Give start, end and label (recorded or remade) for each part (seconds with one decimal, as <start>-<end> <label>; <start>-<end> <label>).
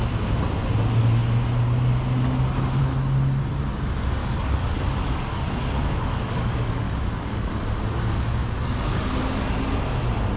0.0-4.2 recorded; 4.2-7.5 remade; 7.5-8.4 recorded; 8.4-9.0 remade; 9.0-10.4 recorded